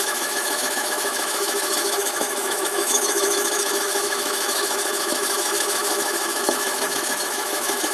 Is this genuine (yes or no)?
no